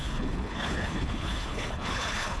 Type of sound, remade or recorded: remade